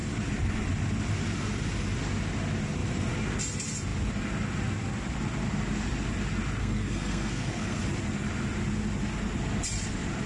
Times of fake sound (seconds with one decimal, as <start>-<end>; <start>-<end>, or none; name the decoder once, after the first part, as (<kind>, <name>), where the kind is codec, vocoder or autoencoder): 6.6-7.8 (codec, SNAC)